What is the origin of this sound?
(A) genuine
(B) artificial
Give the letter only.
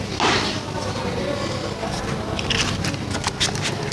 A